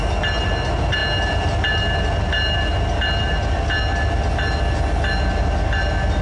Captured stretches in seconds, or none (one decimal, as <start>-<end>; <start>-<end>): 0.0-6.2